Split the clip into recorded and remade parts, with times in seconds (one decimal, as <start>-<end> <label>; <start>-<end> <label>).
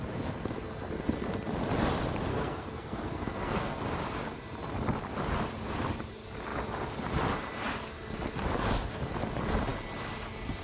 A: 0.0-2.3 recorded; 2.3-3.8 remade; 3.8-10.6 recorded